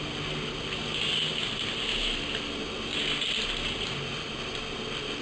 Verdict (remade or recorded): recorded